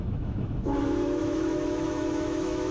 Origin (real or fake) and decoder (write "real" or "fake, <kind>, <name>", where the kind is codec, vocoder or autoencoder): fake, autoencoder, DAC-VAE